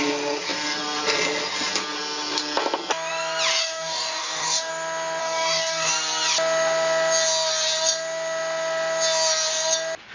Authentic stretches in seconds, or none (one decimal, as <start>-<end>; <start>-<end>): 0.0-3.5; 4.7-5.2; 5.9-10.1